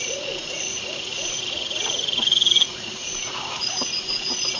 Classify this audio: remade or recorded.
remade